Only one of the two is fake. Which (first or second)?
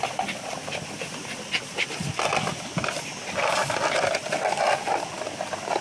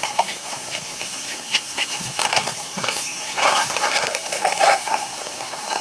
second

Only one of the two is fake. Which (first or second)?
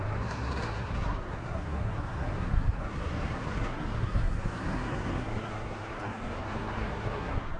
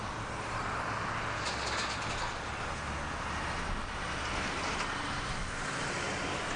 first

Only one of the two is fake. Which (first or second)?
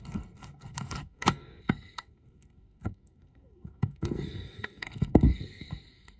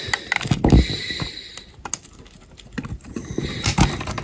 first